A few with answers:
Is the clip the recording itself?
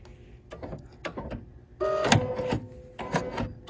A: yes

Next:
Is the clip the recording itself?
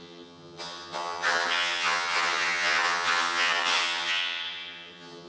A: no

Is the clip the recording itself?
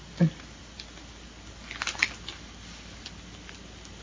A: yes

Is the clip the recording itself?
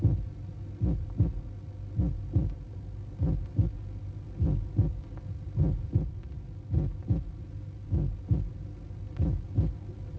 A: yes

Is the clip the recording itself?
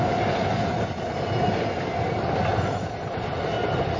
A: yes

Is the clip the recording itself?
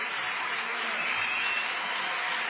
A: yes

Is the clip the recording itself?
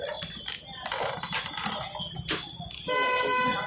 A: yes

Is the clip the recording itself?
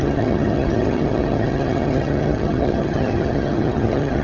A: no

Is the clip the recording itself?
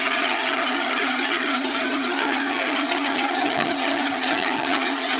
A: no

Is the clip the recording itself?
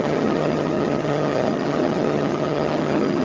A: no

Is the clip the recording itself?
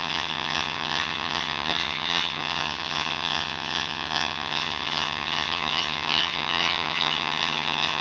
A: no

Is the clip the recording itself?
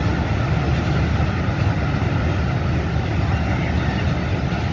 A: yes